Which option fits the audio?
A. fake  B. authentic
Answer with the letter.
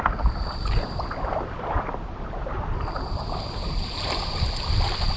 A